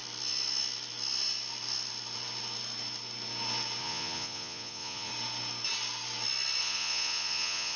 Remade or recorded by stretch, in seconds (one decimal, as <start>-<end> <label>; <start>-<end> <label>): 0.0-3.8 recorded; 3.8-5.1 remade; 5.1-6.6 recorded; 6.6-7.8 remade